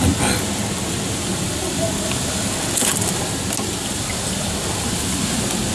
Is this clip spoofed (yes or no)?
no